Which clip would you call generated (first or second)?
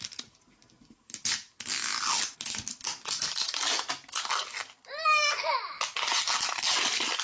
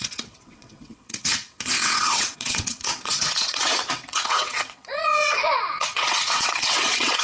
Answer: second